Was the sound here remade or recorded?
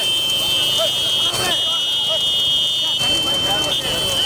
recorded